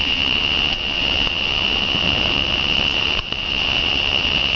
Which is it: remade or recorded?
remade